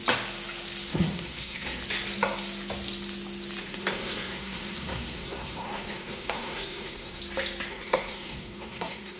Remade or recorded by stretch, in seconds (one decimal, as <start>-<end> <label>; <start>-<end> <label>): 0.0-0.9 recorded; 0.9-1.8 remade; 1.8-3.6 recorded; 3.6-7.2 remade; 7.2-7.7 recorded; 7.7-9.2 remade